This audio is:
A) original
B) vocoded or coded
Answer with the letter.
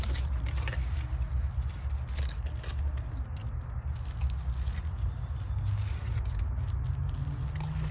A